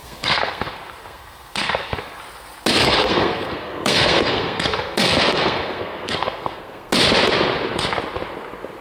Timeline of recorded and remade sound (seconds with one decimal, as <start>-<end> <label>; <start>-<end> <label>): 0.0-2.2 remade; 2.2-2.8 recorded; 2.8-6.9 remade; 6.9-8.8 recorded

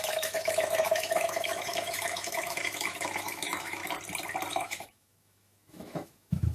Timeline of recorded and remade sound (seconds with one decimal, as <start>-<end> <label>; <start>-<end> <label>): 0.0-3.8 remade; 3.8-4.5 recorded; 4.5-6.5 remade

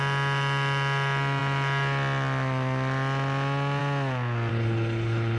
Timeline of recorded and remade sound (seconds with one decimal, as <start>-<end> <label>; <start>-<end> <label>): 0.0-4.5 recorded; 4.5-5.4 remade